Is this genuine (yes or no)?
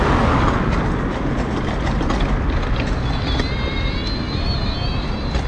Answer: yes